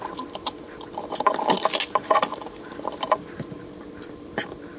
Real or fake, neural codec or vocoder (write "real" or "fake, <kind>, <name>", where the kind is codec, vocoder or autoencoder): real